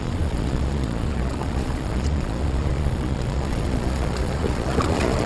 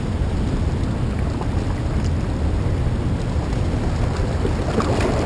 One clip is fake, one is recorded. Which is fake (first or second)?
first